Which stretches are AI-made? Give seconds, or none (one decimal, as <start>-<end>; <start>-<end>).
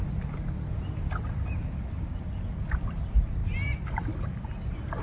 none